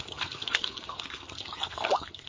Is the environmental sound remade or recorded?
remade